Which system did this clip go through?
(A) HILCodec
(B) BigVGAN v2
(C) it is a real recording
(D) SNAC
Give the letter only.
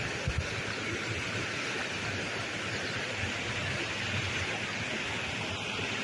C